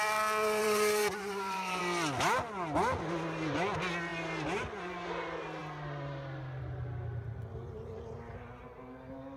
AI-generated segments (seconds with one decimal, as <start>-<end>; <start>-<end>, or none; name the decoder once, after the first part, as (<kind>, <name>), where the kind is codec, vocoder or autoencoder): 0.6-1.8 (vocoder, BigVGAN v2)